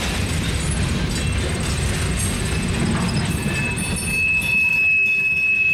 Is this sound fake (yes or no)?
no